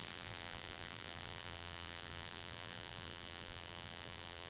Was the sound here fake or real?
fake